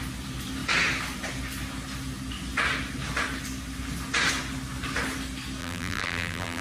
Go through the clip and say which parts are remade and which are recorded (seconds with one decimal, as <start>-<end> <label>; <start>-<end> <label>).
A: 0.0-5.6 recorded; 5.6-6.6 remade